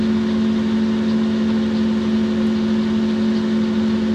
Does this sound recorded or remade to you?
recorded